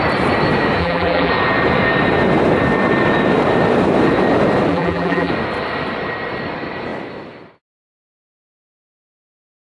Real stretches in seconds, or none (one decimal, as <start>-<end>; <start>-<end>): 0.0-0.8; 1.3-4.7; 5.3-9.6